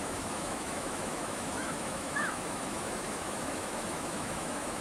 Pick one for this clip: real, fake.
fake